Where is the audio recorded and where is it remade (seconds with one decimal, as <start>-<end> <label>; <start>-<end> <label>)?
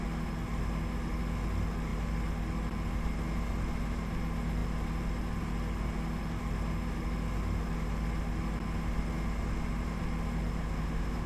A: 0.0-10.6 recorded; 10.6-11.3 remade